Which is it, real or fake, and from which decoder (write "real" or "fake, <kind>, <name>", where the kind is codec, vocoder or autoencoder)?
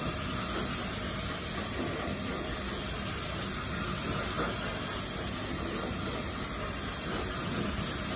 real